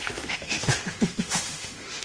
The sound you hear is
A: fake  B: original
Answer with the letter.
A